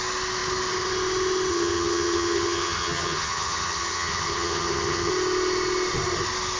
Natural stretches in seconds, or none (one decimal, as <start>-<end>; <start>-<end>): 0.0-1.5; 5.1-6.6